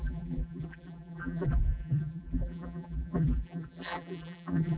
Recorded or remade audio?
remade